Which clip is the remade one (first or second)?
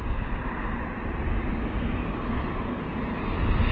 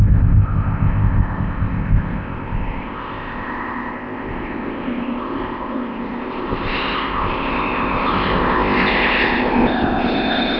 second